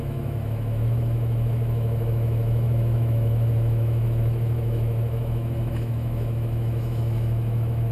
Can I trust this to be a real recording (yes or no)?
no